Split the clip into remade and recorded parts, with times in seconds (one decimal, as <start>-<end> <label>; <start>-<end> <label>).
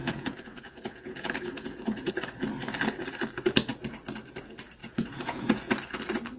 0.0-2.1 remade; 2.1-4.8 recorded; 4.8-5.7 remade; 5.7-6.4 recorded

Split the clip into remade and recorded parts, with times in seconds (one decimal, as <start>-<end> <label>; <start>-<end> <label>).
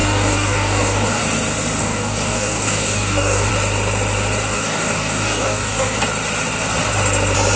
0.0-1.2 remade; 1.2-1.8 recorded; 1.8-3.5 remade; 3.5-4.5 recorded; 4.5-6.0 remade; 6.0-7.6 recorded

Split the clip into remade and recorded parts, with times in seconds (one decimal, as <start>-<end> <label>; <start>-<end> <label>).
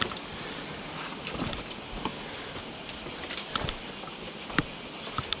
0.0-5.4 recorded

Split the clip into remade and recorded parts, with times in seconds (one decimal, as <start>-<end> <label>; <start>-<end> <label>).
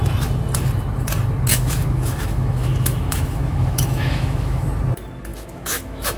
0.0-1.5 recorded; 1.5-4.7 remade; 4.7-5.3 recorded; 5.3-6.2 remade